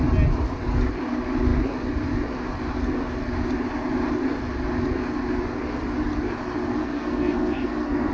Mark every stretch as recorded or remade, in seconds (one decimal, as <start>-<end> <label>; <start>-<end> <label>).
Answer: 0.0-6.8 recorded; 6.8-8.1 remade